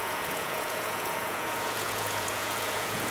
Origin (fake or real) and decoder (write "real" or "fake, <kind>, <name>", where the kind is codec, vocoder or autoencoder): fake, vocoder, Vocos